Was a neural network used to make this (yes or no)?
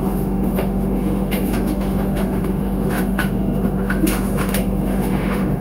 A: yes